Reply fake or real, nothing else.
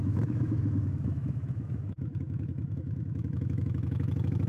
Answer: fake